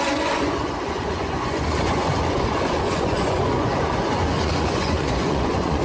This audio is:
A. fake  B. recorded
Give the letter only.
A